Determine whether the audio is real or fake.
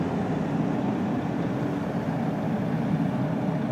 real